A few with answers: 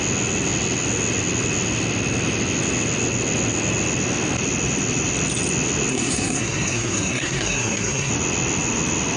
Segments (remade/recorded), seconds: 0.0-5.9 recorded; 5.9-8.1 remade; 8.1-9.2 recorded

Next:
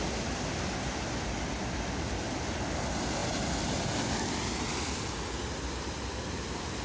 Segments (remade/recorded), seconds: 0.0-6.8 recorded

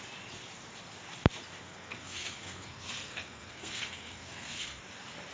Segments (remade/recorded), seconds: 0.0-1.6 recorded; 1.6-4.8 remade; 4.8-5.3 recorded

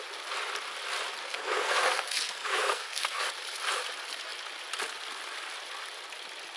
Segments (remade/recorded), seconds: 0.0-1.2 recorded; 1.2-3.3 remade; 3.3-6.6 recorded

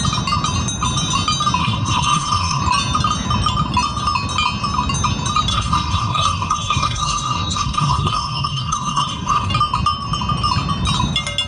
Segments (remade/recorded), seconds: 0.0-1.6 recorded; 1.6-2.6 remade; 2.6-5.5 recorded; 5.5-9.5 remade; 9.5-11.5 recorded

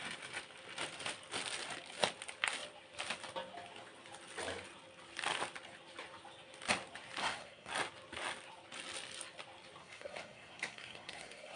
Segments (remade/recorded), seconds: 0.0-7.2 recorded; 7.2-7.7 remade; 7.7-9.8 recorded; 9.8-11.6 remade

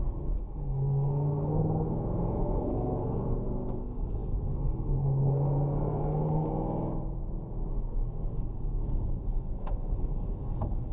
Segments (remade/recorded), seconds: 0.0-6.5 remade; 6.5-7.8 recorded; 7.8-10.9 remade

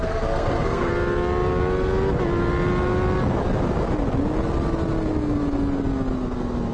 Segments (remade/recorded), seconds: 0.0-0.9 remade; 0.9-6.7 recorded